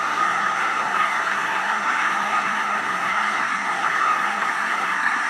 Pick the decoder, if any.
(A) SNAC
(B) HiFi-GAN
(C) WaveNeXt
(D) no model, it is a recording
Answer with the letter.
A